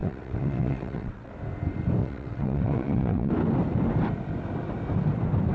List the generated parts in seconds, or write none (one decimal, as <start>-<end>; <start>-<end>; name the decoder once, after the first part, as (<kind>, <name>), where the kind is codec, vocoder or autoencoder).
0.0-1.3 (vocoder, WaveNeXt); 2.0-3.3